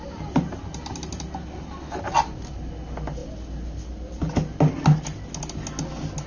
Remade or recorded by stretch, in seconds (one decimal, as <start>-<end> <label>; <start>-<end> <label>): 0.0-6.3 recorded

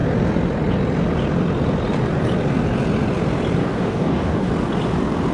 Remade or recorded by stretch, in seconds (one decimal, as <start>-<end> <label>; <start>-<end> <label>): 0.0-3.6 recorded; 3.6-4.5 remade; 4.5-5.3 recorded

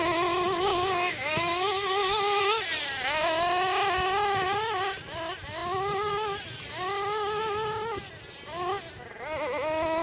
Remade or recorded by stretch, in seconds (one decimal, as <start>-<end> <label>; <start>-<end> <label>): 0.0-0.7 recorded; 0.7-2.4 remade; 2.4-10.0 recorded

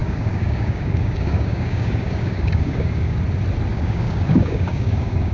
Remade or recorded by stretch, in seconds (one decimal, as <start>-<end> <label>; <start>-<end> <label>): 0.0-3.2 remade; 3.2-3.7 recorded; 3.7-5.3 remade

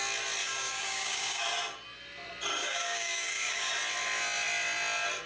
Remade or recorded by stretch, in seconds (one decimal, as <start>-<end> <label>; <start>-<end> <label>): 0.0-0.4 recorded; 0.4-1.4 remade; 1.4-2.6 recorded; 2.6-3.7 remade; 3.7-5.3 recorded

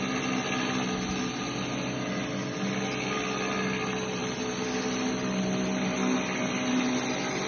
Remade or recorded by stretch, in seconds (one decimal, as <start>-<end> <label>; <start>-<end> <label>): 0.0-7.5 recorded

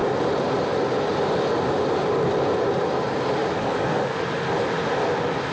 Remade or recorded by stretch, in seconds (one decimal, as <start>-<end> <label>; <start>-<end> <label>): 0.0-3.4 recorded; 3.4-4.2 remade; 4.2-5.5 recorded